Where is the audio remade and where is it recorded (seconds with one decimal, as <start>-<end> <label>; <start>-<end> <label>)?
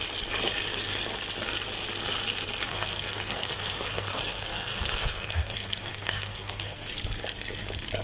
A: 0.0-2.7 recorded; 2.7-6.9 remade; 6.9-8.0 recorded